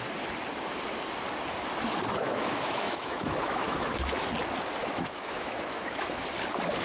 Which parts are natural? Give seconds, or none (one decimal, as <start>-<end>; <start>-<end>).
0.0-2.2; 4.3-4.8; 6.2-6.8